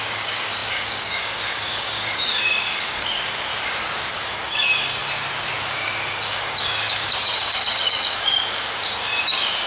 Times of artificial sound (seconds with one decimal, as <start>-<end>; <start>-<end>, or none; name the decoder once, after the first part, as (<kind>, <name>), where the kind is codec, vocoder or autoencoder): 0.0-3.5 (codec, DAC); 4.1-5.0; 5.6-9.7